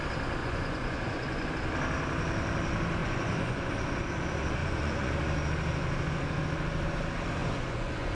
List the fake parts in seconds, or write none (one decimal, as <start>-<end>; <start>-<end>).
0.4-1.5; 3.0-3.7; 4.6-5.1; 7.4-8.1